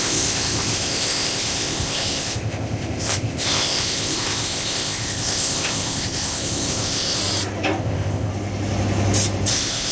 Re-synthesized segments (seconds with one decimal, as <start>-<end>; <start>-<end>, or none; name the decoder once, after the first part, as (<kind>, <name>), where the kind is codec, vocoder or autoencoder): 0.0-7.2 (codec, ZipCodec); 7.8-8.3; 9.5-9.9